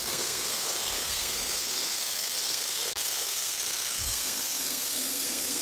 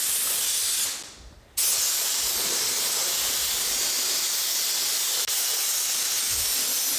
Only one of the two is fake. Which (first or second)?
first